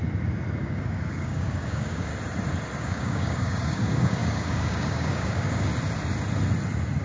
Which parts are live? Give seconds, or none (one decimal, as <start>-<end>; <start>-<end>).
0.0-0.6; 2.1-2.8; 5.7-7.0